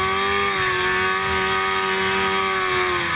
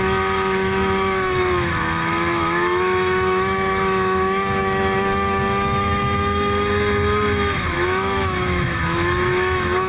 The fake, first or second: second